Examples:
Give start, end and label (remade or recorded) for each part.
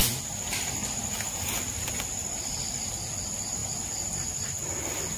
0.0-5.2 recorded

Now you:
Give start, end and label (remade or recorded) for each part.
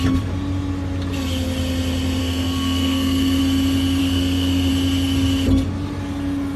0.0-2.2 recorded; 2.2-3.4 remade; 3.4-4.0 recorded; 4.0-4.7 remade; 4.7-6.6 recorded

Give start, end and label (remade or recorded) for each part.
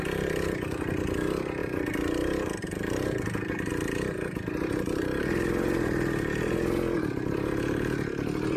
0.0-1.6 recorded; 1.6-3.7 remade; 3.7-8.6 recorded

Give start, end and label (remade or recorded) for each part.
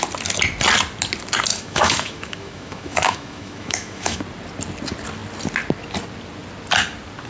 0.0-1.5 recorded; 1.5-4.2 remade; 4.2-7.3 recorded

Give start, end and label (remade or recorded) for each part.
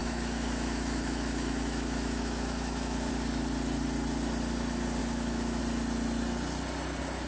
0.0-3.1 remade; 3.1-5.0 recorded; 5.0-5.6 remade; 5.6-7.3 recorded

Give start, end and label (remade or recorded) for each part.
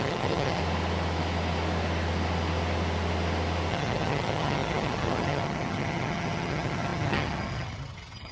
0.0-0.6 remade; 0.6-3.7 recorded; 3.7-8.3 remade